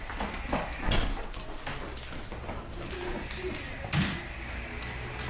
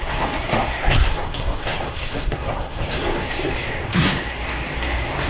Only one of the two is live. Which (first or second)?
first